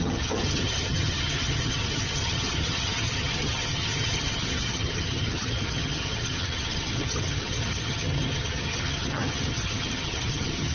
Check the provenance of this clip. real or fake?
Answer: fake